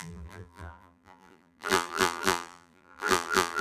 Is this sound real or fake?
fake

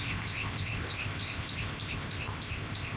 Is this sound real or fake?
fake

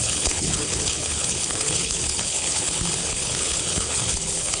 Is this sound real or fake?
fake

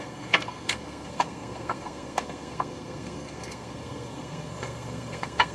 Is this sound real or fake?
fake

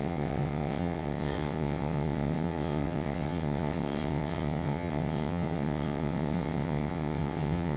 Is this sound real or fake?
fake